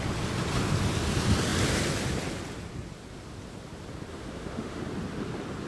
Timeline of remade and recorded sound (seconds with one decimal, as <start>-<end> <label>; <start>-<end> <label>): 0.0-4.1 recorded; 4.1-4.8 remade; 4.8-5.7 recorded